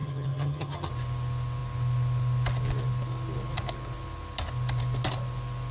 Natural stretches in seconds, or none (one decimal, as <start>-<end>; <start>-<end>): 0.9-5.7